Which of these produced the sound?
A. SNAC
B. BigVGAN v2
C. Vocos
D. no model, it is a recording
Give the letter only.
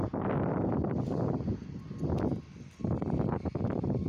D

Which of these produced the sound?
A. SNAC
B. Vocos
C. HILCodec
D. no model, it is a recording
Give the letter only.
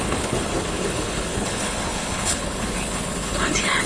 C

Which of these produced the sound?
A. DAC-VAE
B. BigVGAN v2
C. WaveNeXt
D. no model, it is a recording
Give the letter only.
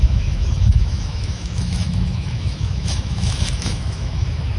A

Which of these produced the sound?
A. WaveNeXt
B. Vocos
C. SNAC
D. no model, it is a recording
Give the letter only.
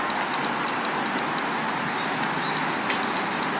D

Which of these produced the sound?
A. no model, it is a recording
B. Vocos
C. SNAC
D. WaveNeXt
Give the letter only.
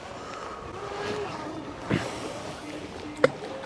A